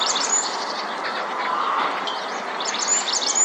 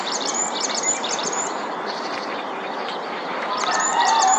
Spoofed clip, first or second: second